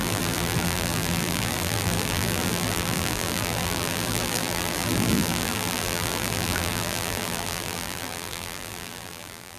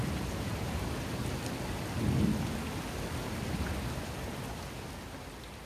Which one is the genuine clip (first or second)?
second